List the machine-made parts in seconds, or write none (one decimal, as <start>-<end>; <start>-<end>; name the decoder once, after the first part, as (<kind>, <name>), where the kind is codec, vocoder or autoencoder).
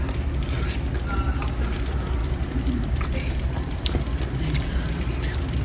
2.2-4.0 (vocoder, BigVGAN v2)